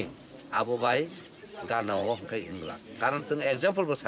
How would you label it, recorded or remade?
remade